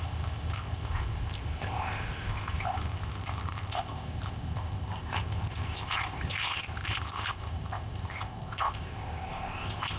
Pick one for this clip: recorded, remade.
remade